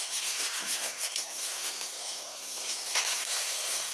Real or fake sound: fake